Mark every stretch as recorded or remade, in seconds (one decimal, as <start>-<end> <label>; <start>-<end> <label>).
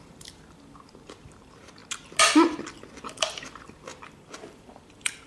0.0-1.8 remade; 1.8-3.4 recorded; 3.4-3.9 remade; 3.9-4.5 recorded; 4.5-5.3 remade